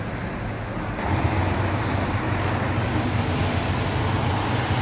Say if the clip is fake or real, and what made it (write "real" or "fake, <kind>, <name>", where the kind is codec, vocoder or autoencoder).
real